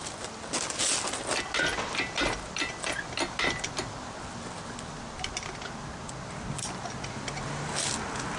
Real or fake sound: real